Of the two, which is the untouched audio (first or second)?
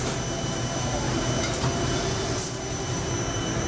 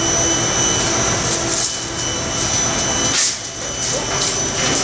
second